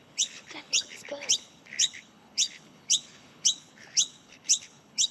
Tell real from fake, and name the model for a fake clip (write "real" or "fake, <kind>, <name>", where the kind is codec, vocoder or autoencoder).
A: fake, codec, HILCodec